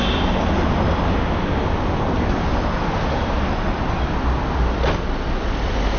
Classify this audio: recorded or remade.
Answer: recorded